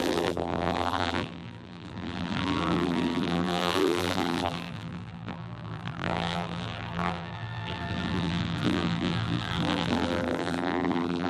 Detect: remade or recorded remade